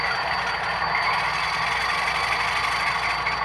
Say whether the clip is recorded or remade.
recorded